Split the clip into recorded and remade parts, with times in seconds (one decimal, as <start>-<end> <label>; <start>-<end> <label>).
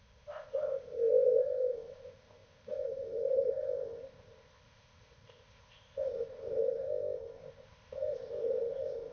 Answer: 0.0-9.1 remade